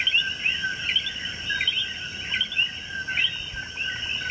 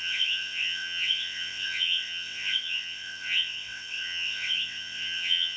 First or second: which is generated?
second